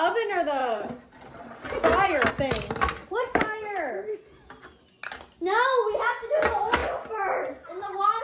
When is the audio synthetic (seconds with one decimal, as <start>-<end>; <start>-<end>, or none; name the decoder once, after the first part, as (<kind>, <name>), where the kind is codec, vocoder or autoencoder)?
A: 0.6-2.3 (vocoder, BigVGAN v2); 3.0-4.2